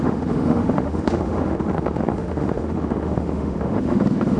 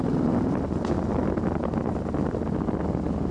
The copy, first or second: first